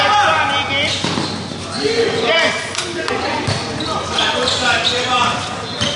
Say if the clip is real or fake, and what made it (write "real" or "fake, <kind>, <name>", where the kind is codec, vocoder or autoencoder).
real